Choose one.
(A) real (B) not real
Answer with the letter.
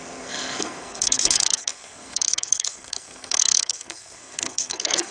B